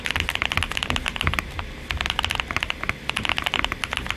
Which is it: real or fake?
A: real